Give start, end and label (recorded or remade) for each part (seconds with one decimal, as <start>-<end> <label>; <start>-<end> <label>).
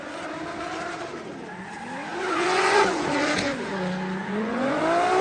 0.0-2.1 recorded; 2.1-3.7 remade; 3.7-4.2 recorded; 4.2-4.8 remade; 4.8-5.2 recorded